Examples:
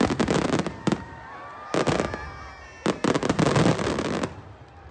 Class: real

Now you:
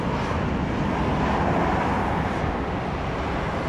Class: real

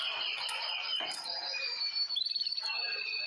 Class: real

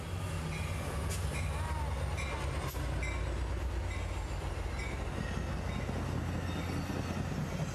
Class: real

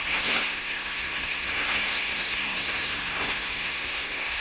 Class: fake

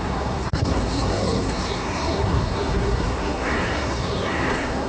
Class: fake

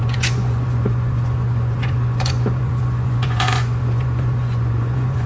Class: fake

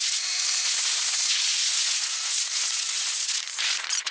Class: fake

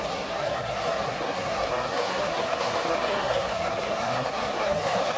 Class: fake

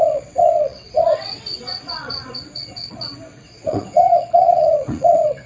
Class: fake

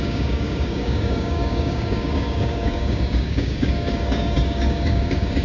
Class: fake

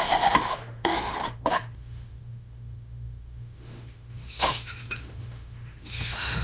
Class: fake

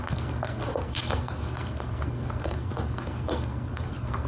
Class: fake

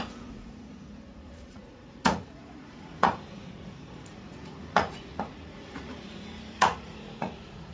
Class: fake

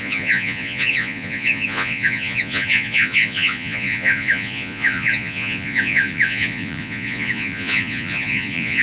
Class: fake